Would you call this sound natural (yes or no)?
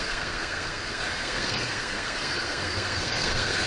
no